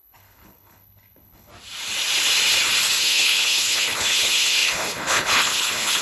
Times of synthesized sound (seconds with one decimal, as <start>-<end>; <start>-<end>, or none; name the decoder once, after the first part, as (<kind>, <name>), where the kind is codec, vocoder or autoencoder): 0.0-1.5 (codec, HILCodec); 3.0-6.0